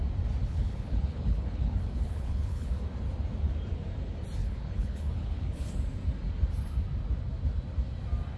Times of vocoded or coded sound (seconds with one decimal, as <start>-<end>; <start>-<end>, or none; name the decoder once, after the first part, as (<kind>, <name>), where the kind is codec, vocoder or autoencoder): 0.4-2.8 (codec, HILCodec); 4.4-5.7